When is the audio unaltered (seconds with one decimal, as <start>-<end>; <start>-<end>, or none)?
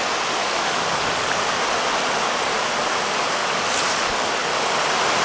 0.0-0.4; 1.4-3.4; 4.3-5.2